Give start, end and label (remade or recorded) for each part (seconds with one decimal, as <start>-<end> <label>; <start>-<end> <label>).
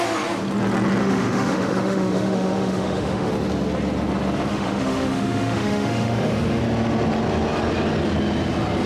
0.0-1.0 recorded; 1.0-3.3 remade; 3.3-4.5 recorded; 4.5-6.6 remade; 6.6-8.9 recorded